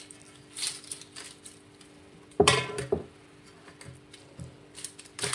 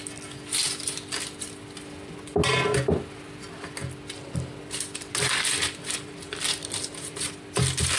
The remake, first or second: first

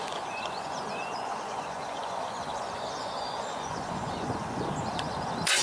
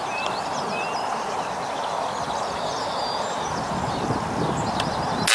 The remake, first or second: first